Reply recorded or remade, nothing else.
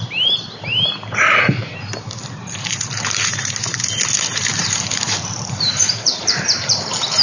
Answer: remade